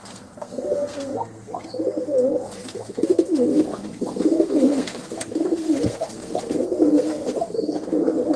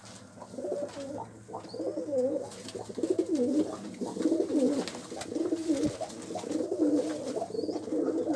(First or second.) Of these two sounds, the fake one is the first